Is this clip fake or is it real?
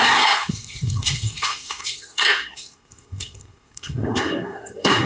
fake